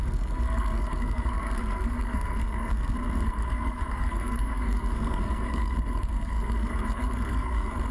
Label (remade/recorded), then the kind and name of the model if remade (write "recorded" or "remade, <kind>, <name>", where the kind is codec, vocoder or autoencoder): remade, codec, SNAC